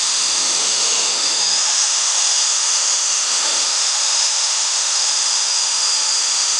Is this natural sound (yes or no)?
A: no